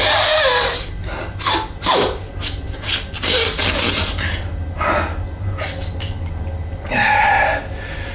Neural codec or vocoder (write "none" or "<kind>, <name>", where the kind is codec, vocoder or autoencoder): none